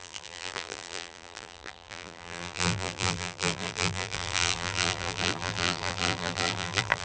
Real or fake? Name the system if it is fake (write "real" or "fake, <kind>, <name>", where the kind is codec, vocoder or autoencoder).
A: fake, vocoder, BigVGAN v2